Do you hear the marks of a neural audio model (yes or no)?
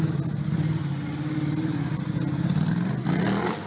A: no